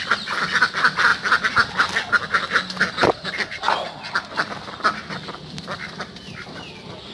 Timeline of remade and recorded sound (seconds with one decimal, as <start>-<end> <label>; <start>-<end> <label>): 0.0-7.1 recorded